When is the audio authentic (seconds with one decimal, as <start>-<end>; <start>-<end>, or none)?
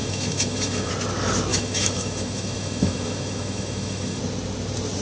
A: 0.9-1.5; 4.2-5.0